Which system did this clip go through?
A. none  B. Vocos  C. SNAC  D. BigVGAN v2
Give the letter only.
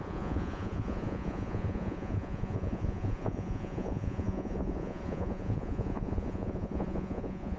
B